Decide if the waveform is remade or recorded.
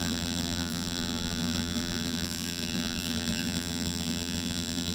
remade